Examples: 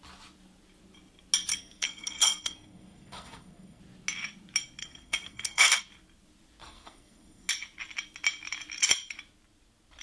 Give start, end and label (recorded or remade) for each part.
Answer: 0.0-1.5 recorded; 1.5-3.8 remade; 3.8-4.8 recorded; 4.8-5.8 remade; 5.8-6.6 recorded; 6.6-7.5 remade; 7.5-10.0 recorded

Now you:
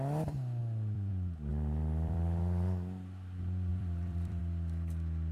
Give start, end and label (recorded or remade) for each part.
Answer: 0.0-0.6 recorded; 0.6-1.1 remade; 1.1-1.5 recorded; 1.5-2.4 remade; 2.4-3.7 recorded; 3.7-4.4 remade; 4.4-5.3 recorded

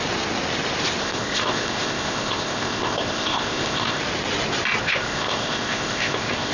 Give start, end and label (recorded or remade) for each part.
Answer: 0.0-1.0 recorded; 1.0-4.0 remade; 4.0-4.8 recorded; 4.8-6.5 remade

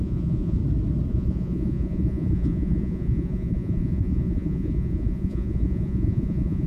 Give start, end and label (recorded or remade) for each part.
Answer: 0.0-0.6 remade; 0.6-1.1 recorded; 1.1-6.7 remade